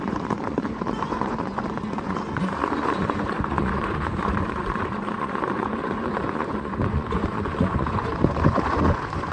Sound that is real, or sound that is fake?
fake